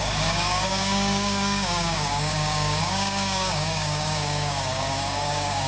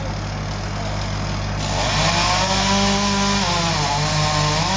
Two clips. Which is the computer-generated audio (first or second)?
first